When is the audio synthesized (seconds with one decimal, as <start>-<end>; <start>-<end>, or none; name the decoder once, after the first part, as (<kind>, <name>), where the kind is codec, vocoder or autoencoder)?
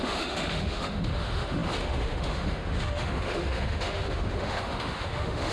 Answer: 0.0-5.5 (autoencoder, DAC-VAE)